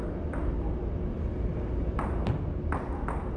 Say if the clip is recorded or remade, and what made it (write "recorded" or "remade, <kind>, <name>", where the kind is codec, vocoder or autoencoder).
recorded